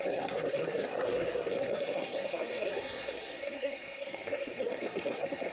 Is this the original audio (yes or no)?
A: no